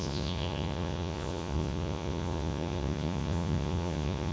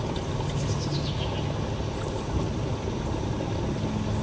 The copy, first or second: first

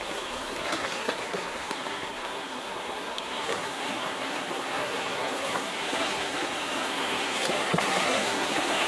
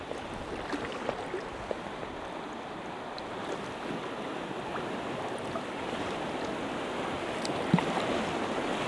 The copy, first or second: first